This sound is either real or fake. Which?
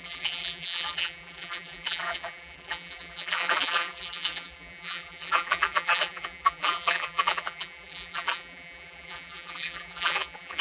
fake